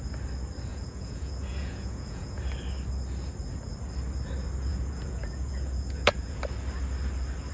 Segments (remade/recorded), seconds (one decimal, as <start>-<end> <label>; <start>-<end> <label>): 0.0-0.7 recorded; 0.7-2.4 remade; 2.4-4.7 recorded; 4.7-6.4 remade; 6.4-7.5 recorded